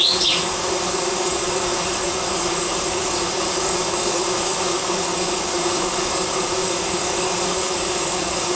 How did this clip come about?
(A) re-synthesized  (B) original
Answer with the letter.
A